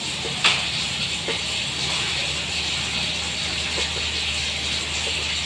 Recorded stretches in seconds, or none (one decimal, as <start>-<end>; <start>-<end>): 0.0-0.5; 3.8-5.5

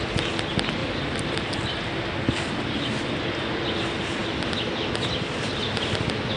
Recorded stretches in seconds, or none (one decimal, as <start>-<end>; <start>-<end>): 0.0-0.8; 1.6-4.2; 6.0-6.4

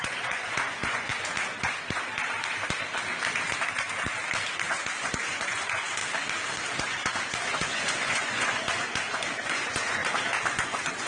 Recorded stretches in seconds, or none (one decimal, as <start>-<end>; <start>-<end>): 1.1-4.7; 6.0-6.8; 10.0-10.5

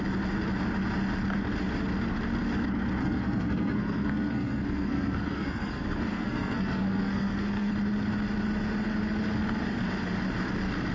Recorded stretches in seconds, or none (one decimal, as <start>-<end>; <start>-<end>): 0.0-3.0; 7.7-10.9

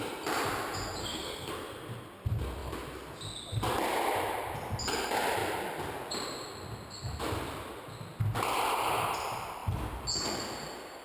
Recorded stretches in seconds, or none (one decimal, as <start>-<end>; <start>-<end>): 0.0-1.0; 1.5-11.0

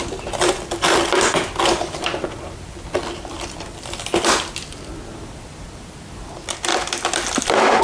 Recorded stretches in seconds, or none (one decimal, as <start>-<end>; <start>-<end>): 0.0-7.8

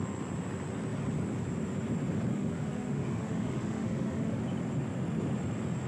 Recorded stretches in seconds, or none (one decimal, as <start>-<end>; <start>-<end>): 0.0-2.3; 4.4-5.9